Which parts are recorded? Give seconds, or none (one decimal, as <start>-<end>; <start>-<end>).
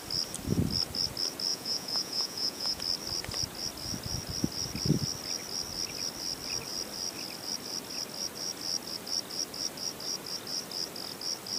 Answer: 0.0-1.5; 2.8-11.6